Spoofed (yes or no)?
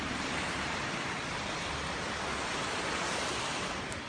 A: no